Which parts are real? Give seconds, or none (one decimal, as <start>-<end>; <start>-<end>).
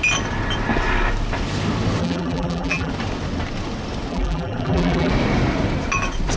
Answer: 0.0-2.0; 2.9-4.1; 5.1-6.4